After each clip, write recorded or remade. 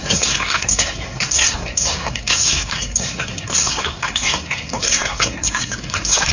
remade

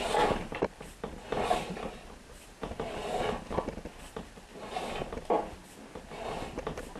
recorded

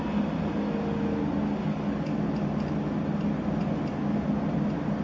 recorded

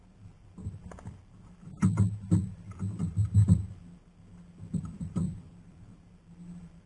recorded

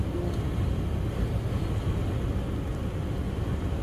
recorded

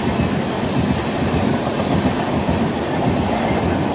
recorded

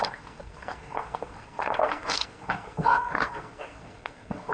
remade